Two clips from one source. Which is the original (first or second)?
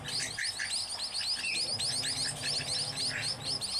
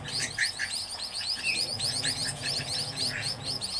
first